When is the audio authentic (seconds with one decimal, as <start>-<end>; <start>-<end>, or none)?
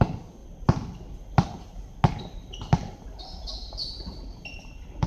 0.0-5.1